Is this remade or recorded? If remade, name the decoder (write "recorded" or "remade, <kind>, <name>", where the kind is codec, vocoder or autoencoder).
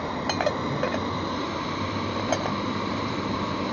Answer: recorded